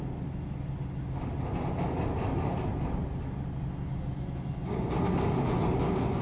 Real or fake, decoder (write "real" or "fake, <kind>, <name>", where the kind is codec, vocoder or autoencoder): real